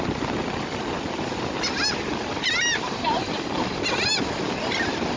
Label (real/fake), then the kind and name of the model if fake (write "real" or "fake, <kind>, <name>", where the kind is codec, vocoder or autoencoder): real